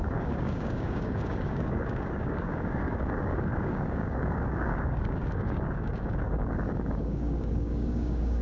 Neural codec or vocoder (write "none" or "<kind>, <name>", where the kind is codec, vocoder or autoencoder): codec, DAC